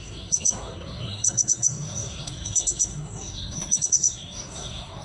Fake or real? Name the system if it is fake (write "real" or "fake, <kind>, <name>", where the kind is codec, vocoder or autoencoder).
fake, codec, SNAC